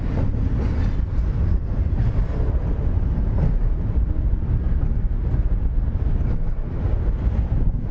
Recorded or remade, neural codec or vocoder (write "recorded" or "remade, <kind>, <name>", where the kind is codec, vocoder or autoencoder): recorded